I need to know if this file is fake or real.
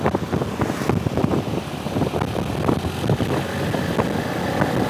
real